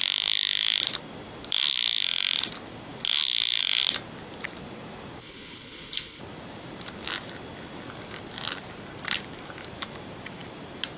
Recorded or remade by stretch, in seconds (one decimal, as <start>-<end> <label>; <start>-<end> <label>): 0.0-5.2 recorded; 5.2-6.2 remade; 6.2-11.0 recorded